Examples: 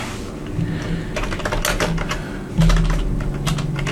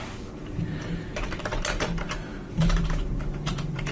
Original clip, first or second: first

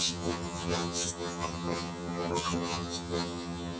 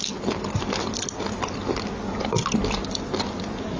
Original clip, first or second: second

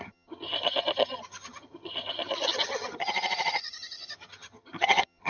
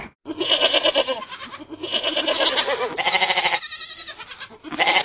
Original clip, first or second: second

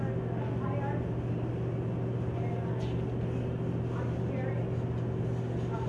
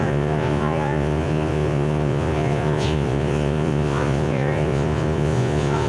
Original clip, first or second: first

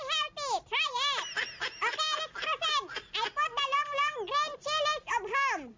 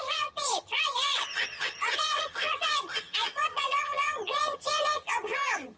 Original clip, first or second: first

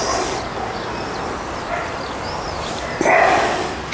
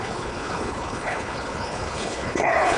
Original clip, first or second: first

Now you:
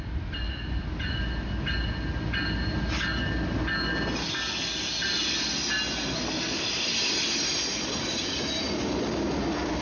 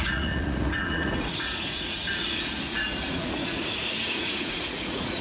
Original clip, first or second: first